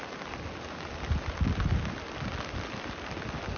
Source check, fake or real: real